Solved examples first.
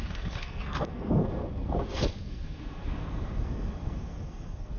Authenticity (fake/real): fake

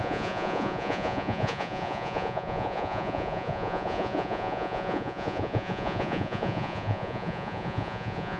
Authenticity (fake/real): fake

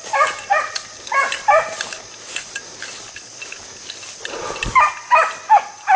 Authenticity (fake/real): real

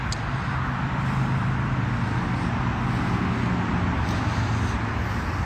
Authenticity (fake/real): real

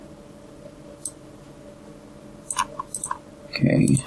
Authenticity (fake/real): real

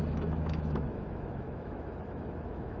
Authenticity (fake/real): fake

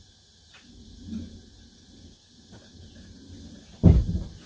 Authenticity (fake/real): real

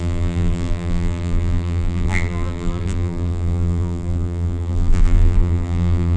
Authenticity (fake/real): fake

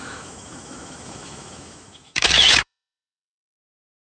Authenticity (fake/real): fake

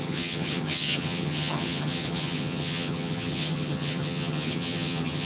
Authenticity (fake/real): fake